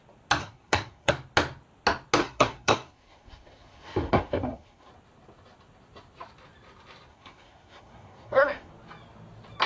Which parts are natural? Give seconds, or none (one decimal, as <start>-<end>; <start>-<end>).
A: 0.0-0.4; 1.1-2.2; 4.9-7.1; 8.7-9.7